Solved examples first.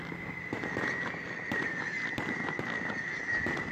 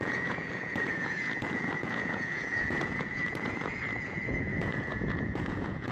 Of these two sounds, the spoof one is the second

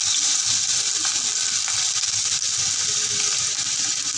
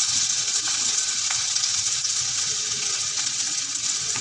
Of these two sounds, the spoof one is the second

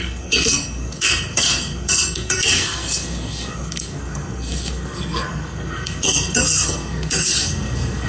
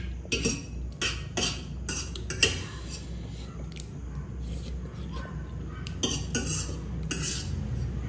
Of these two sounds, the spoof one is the first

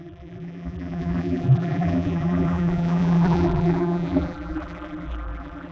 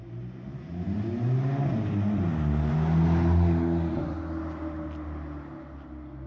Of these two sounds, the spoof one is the first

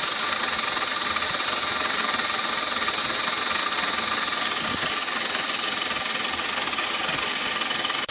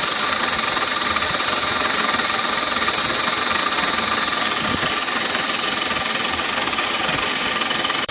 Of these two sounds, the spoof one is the second